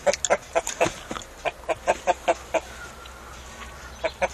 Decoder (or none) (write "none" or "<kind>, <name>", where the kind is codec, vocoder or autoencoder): none